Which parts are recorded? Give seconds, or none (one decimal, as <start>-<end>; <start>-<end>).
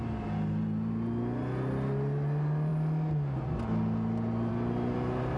0.0-5.4